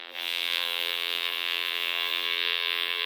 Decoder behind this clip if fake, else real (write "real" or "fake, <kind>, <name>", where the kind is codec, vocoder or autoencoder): fake, vocoder, BigVGAN v2